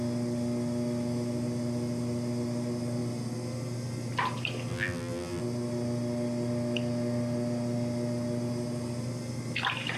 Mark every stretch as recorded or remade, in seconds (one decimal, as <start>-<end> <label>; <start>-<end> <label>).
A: 0.0-4.7 recorded; 4.7-5.4 remade; 5.4-10.0 recorded